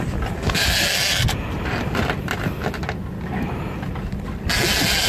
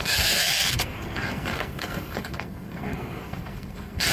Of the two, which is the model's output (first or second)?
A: second